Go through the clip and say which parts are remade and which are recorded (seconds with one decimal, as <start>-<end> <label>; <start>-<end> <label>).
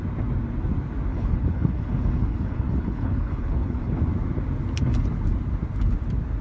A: 0.0-1.1 recorded; 1.1-4.0 remade; 4.0-6.4 recorded